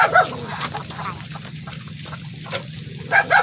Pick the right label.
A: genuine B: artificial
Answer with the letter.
A